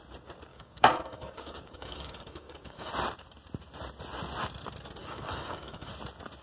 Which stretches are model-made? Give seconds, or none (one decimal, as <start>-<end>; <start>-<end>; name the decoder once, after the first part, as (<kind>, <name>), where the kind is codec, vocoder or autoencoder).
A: 0.5-2.9 (codec, DAC); 5.0-5.9